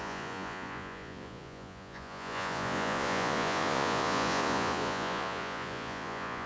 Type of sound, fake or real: fake